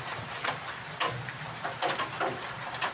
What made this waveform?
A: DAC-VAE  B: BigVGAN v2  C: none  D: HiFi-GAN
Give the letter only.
C